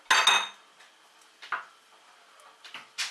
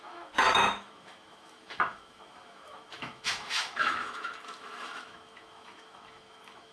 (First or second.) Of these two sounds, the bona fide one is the first